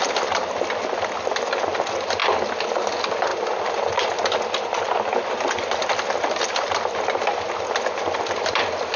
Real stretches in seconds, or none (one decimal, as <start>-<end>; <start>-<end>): 2.2-2.9